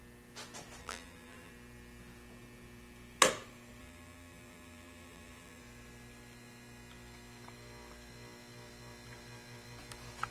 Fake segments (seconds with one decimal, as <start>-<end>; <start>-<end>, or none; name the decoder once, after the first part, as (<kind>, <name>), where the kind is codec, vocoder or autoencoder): 0.8-1.5 (vocoder, BigVGAN v2); 3.8-5.6